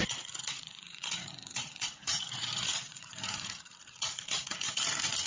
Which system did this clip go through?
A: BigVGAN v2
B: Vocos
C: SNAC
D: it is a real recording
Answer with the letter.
B